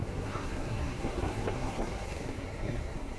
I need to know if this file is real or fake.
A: fake